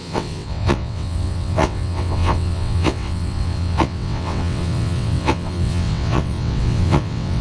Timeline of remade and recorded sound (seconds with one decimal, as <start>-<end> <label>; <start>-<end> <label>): 0.0-7.4 remade